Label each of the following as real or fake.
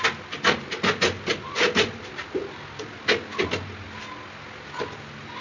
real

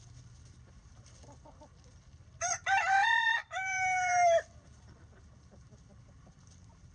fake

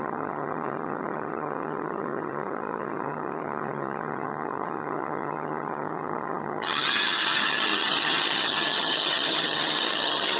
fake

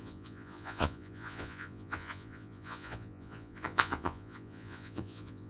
fake